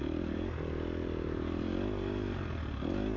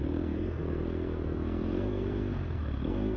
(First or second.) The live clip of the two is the first